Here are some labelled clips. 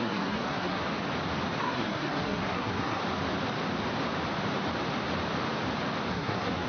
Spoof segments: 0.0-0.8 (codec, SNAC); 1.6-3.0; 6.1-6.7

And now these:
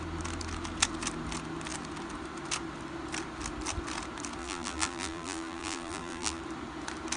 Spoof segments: 4.4-6.4 (vocoder, BigVGAN v2)